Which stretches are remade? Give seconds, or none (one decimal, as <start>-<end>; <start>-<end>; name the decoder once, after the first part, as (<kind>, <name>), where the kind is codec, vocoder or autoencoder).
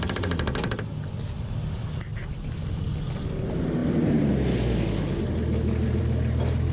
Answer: none